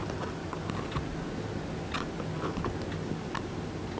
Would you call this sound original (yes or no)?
yes